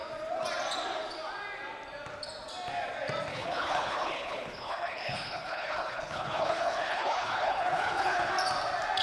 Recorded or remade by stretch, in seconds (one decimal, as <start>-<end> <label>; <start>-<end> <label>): 0.0-3.3 recorded; 3.3-8.3 remade; 8.3-9.0 recorded